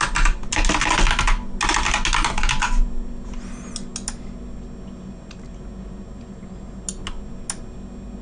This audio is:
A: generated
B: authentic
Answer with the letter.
B